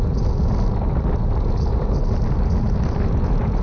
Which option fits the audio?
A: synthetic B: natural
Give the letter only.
B